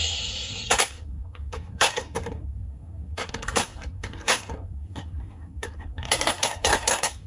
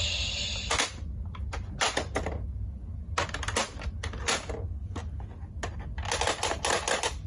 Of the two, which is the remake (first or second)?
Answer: first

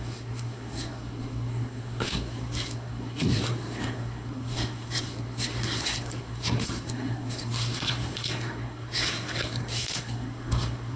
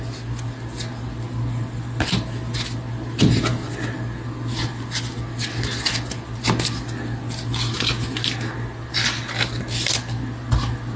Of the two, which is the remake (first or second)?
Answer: first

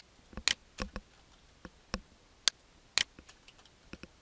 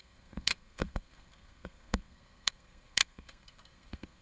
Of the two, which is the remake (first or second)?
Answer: second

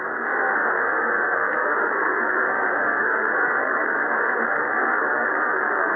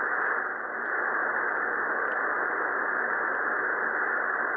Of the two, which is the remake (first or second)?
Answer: first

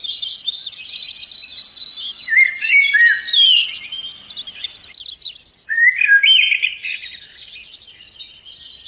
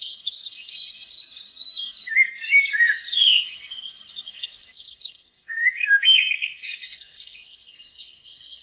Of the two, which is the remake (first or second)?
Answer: second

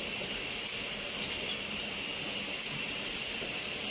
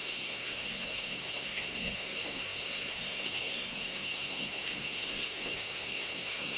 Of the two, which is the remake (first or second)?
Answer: second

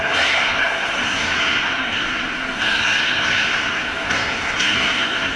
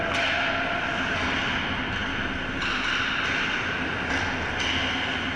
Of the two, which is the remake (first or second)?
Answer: first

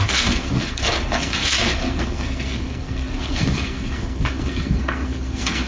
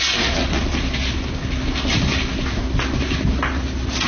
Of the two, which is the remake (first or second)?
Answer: first